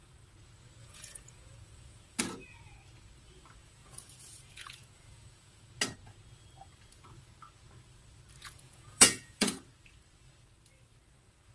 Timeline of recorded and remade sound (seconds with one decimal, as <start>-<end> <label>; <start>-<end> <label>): 0.0-0.8 recorded; 0.8-2.2 remade; 2.2-3.6 recorded; 3.6-5.7 remade; 5.7-8.4 recorded; 8.4-9.7 remade; 9.7-11.5 recorded